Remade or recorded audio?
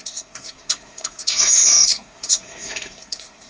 remade